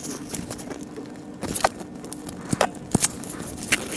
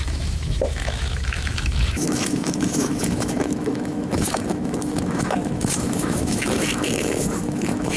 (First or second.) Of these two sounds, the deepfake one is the second